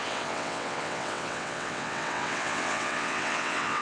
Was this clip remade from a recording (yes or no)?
yes